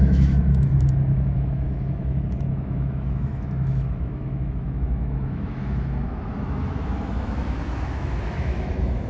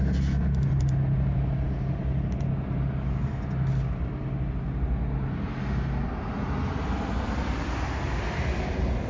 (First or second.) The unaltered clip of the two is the second